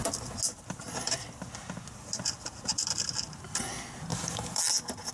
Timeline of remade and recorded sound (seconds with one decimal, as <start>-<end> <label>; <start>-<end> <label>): 0.0-4.1 recorded; 4.1-4.6 remade; 4.6-5.1 recorded

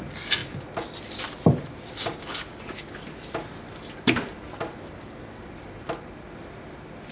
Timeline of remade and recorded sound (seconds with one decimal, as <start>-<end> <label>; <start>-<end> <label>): 0.0-7.1 recorded

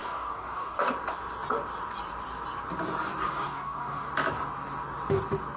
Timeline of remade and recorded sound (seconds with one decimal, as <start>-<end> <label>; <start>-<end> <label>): 0.0-0.9 remade; 0.9-3.3 recorded; 3.3-4.1 remade; 4.1-5.6 recorded

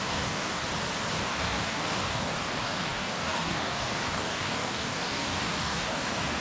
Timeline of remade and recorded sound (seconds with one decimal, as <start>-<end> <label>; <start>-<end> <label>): 0.0-0.6 remade; 0.6-1.1 recorded; 1.1-6.4 remade

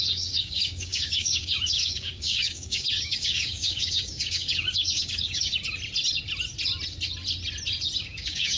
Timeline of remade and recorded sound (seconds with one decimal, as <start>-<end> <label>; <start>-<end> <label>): 0.0-5.5 remade; 5.5-8.0 recorded; 8.0-8.6 remade